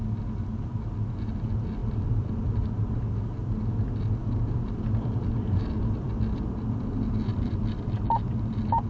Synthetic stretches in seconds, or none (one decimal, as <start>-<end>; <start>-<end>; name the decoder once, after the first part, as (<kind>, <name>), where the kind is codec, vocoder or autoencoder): 1.8-3.1 (vocoder, BigVGAN v2); 4.2-8.5